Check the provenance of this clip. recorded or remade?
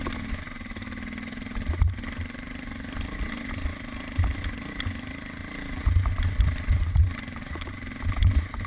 recorded